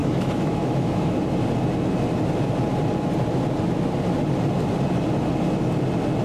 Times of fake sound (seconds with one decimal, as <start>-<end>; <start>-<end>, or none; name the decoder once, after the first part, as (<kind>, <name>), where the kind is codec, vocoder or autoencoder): 0.0-1.2 (autoencoder, DAC-VAE)